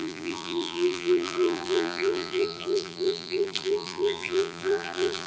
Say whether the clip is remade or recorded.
remade